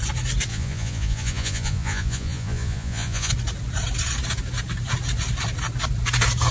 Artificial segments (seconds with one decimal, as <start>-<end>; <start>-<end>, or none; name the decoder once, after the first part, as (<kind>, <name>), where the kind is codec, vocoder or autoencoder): 0.5-3.3 (vocoder, Vocos)